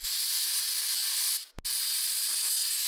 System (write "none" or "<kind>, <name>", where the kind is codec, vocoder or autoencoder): none